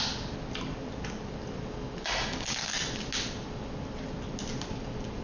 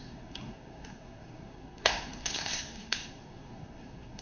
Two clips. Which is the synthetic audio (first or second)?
second